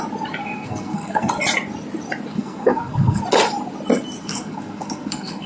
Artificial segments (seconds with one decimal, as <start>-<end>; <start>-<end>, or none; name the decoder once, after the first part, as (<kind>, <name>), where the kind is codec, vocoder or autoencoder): 0.4-1.3 (codec, SNAC); 2.3-3.2; 4.2-5.5